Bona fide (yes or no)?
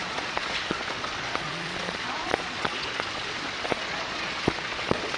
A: no